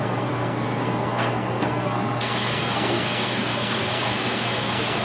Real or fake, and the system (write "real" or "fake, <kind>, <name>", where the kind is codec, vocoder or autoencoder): fake, codec, SNAC